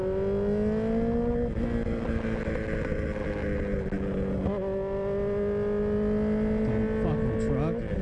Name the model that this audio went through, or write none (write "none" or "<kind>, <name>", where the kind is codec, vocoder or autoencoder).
none